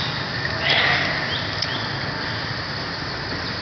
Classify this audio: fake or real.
real